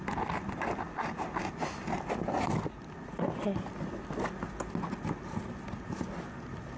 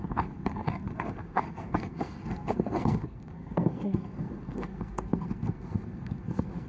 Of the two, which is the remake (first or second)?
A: second